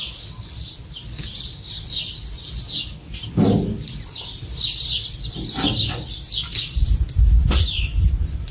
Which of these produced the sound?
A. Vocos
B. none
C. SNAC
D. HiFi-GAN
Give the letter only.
B